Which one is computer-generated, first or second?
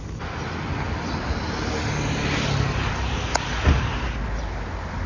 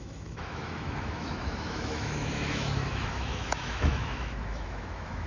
second